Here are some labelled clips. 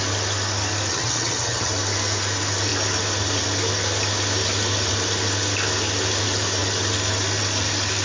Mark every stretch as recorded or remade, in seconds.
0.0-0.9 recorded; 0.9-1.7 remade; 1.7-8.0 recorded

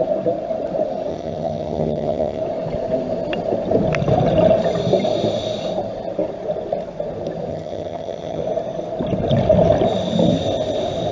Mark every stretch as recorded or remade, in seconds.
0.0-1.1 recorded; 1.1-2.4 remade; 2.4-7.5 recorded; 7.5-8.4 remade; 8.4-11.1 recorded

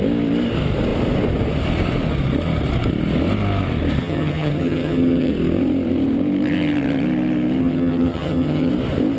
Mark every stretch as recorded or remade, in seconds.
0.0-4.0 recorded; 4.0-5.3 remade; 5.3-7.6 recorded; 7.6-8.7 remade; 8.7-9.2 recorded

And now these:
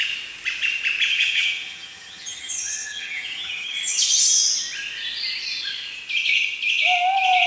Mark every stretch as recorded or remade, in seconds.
0.0-1.1 recorded; 1.1-4.2 remade; 4.2-7.5 recorded

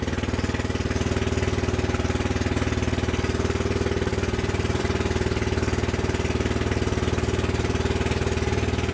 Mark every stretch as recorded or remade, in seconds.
0.0-8.9 recorded

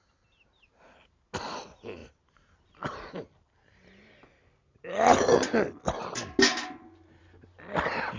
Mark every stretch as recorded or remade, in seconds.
0.0-8.2 recorded